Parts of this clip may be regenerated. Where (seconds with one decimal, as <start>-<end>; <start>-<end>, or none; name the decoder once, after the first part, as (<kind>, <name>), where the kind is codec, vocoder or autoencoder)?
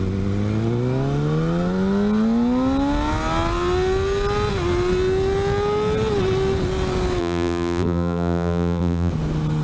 7.2-9.1 (vocoder, BigVGAN v2)